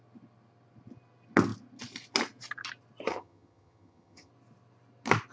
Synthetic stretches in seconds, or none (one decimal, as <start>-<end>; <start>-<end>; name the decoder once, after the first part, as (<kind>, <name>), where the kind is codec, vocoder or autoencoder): 3.1-4.3 (vocoder, HiFi-GAN)